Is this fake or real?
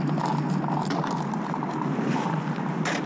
real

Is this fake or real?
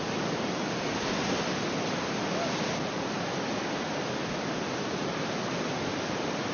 real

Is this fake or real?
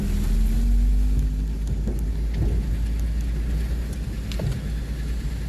real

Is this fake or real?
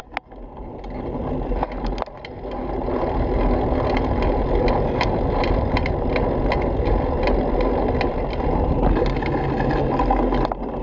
real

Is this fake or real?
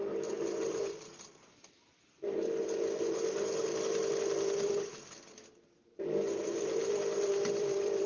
fake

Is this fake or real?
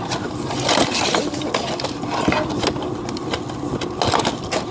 real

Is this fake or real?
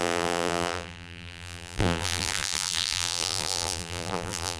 fake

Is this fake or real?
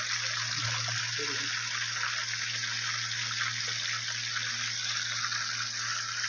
real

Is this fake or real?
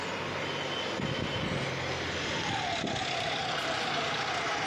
real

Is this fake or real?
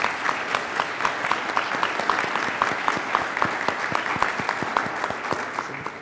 real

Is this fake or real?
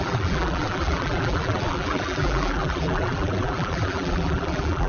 fake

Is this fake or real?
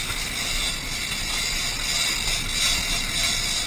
real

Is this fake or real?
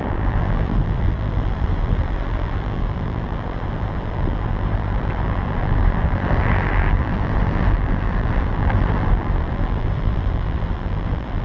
fake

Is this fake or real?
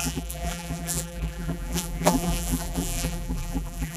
fake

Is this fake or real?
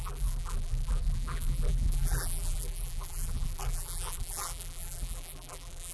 fake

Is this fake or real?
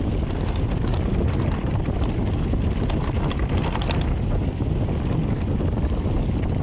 real